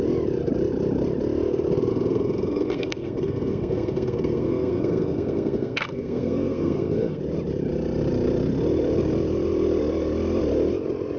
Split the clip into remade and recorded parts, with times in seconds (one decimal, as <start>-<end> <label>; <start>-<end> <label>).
0.0-1.9 recorded; 1.9-7.2 remade; 7.2-11.2 recorded